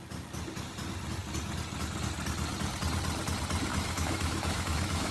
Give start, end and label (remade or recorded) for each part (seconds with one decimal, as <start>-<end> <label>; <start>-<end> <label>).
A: 0.0-3.7 recorded; 3.7-5.1 remade